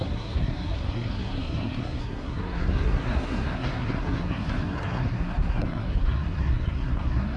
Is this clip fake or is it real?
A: fake